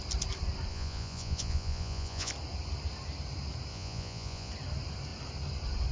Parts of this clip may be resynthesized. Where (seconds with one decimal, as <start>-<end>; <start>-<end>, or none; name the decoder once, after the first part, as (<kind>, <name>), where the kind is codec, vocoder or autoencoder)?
0.7-2.3 (vocoder, Vocos); 3.7-4.5